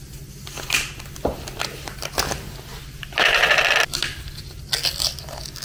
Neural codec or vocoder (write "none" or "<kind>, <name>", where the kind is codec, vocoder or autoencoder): none